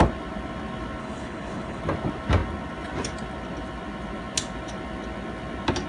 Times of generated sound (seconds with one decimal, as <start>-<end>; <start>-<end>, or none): 1.0-1.8